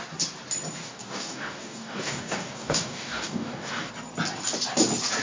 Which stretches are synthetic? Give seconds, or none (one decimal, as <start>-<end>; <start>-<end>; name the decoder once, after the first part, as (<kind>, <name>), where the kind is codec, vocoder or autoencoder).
0.8-3.9 (codec, DAC)